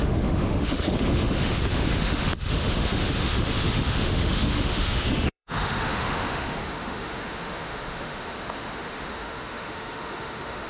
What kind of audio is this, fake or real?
fake